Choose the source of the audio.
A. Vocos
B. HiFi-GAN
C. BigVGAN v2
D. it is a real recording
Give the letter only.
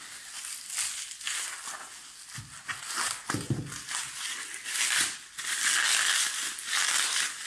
D